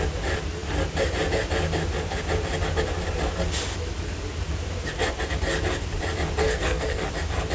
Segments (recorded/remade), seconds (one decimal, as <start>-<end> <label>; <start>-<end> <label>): 0.0-6.4 recorded; 6.4-7.1 remade; 7.1-7.5 recorded